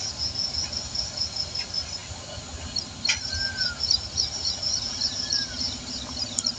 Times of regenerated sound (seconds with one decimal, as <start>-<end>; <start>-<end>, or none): 2.0-2.5